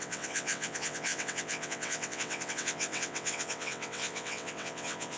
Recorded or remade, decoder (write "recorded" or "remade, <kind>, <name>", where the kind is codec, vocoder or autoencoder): remade, vocoder, WaveNeXt